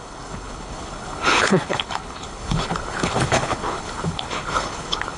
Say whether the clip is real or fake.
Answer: fake